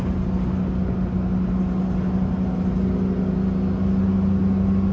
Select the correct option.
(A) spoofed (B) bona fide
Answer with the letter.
B